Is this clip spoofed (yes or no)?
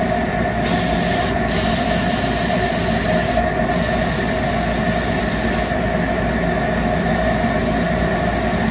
no